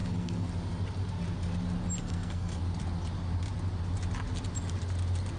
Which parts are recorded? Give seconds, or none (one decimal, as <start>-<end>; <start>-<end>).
0.5-2.0; 2.6-5.4